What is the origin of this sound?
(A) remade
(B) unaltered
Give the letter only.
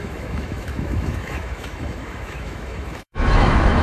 A